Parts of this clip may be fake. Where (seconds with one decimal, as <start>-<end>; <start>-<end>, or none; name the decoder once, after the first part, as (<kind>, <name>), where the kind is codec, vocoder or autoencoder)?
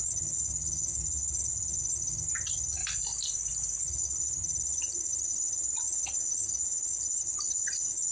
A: 0.0-2.8 (vocoder, HiFi-GAN); 3.8-8.1